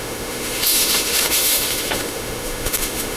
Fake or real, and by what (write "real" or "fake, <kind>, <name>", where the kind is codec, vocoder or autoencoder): fake, autoencoder, DAC-VAE